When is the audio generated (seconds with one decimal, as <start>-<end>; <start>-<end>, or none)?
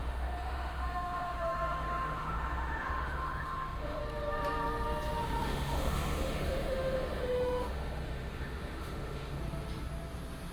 0.0-4.0; 5.2-9.4